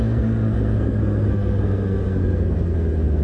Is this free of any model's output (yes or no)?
no